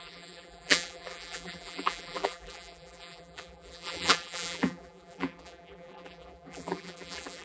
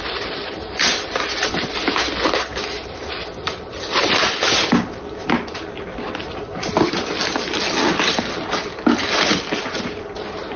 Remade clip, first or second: first